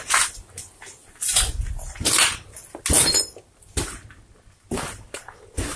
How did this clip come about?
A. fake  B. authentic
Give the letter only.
B